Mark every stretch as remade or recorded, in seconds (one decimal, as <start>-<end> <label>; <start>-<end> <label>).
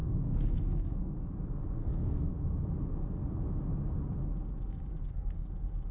0.0-1.3 remade; 1.3-1.8 recorded; 1.8-2.3 remade; 2.3-4.9 recorded; 4.9-5.5 remade; 5.5-5.9 recorded